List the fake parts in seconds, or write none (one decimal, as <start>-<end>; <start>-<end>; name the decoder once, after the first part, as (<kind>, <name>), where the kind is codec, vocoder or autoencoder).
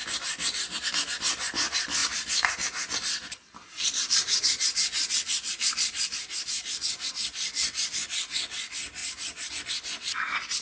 0.0-0.9 (vocoder, BigVGAN v2); 2.0-7.1; 9.0-9.5